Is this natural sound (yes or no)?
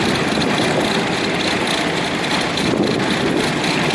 yes